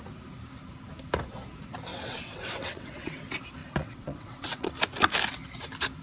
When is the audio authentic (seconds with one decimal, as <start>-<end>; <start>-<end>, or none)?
0.0-1.9; 3.2-3.6; 4.7-6.0